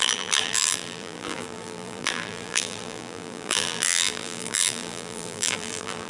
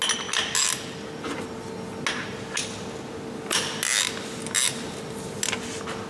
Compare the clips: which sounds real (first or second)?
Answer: second